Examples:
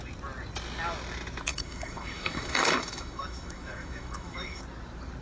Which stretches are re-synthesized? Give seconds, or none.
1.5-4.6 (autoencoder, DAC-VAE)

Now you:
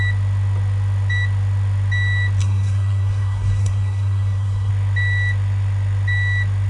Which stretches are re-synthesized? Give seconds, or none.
2.4-4.7 (codec, SNAC)

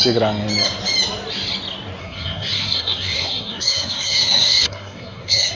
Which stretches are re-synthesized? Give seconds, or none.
2.0-5.5 (codec, SNAC)